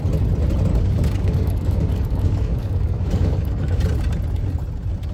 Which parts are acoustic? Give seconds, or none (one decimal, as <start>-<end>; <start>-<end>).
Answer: 0.0-0.7; 3.8-5.1